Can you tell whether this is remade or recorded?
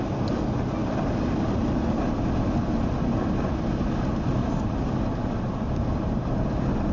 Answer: recorded